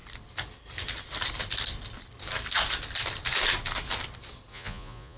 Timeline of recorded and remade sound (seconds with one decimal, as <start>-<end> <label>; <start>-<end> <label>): 0.0-4.5 recorded; 4.5-5.2 remade